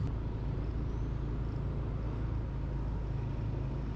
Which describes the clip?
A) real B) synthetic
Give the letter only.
A